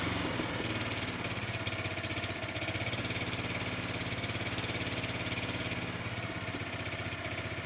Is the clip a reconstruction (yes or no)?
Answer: no